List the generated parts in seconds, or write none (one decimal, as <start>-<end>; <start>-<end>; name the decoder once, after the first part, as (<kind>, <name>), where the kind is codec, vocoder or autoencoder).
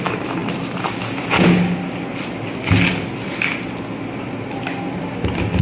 none